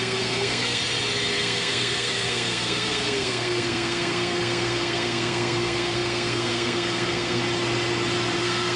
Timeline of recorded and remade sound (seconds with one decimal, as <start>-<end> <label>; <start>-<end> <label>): 0.0-0.8 remade; 0.8-1.4 recorded; 1.4-7.4 remade; 7.4-8.4 recorded; 8.4-8.8 remade